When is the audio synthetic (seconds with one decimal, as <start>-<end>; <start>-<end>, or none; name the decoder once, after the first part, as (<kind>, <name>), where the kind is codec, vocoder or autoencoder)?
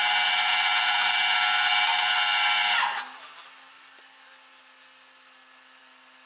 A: none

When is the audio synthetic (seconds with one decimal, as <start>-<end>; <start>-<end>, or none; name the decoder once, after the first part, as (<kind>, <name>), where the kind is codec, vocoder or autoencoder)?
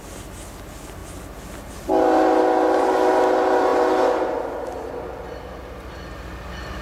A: none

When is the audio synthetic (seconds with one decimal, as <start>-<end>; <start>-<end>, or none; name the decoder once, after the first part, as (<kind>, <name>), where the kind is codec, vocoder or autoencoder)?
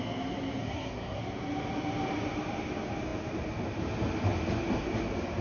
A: 0.6-1.2 (codec, SNAC)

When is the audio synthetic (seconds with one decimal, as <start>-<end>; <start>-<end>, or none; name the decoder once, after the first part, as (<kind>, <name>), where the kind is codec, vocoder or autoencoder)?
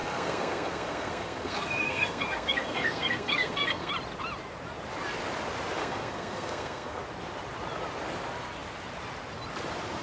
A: 0.0-3.9 (codec, SNAC); 5.8-7.0